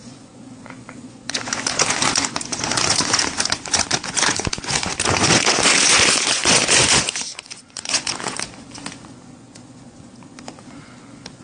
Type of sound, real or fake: fake